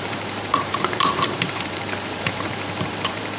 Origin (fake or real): fake